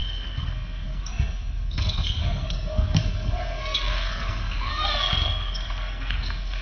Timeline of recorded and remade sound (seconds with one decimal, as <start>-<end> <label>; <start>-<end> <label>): 0.0-6.6 remade